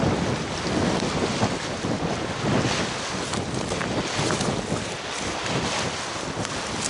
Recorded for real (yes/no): yes